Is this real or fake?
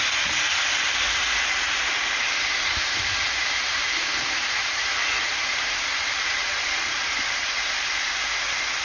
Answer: real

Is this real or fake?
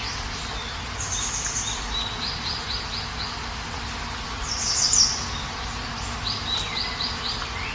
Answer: real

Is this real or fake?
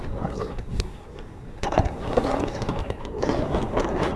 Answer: fake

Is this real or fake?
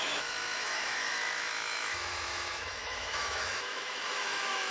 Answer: fake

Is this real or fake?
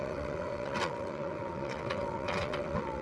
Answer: fake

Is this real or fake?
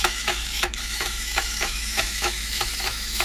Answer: fake